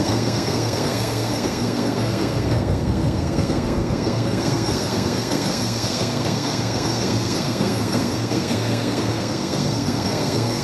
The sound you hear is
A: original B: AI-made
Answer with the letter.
B